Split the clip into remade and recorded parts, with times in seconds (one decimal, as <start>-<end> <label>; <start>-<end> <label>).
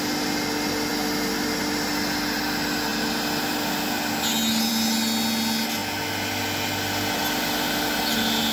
0.0-8.5 recorded